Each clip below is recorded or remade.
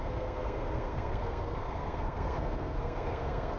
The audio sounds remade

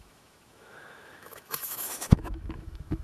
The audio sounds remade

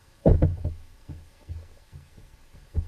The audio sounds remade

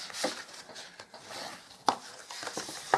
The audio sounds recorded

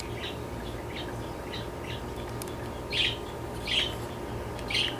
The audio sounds recorded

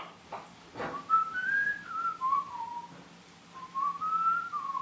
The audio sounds recorded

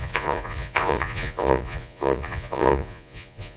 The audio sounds remade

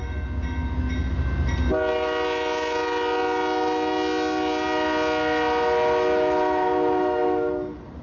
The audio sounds recorded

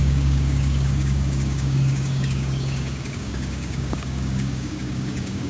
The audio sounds remade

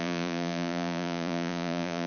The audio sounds remade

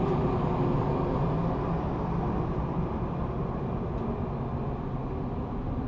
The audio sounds recorded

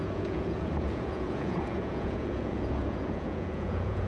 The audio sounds remade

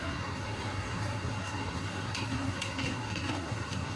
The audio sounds remade